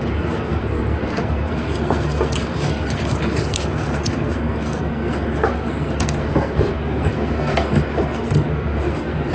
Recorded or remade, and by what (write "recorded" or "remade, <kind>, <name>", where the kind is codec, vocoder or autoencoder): remade, codec, SNAC